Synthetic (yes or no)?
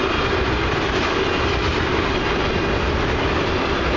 no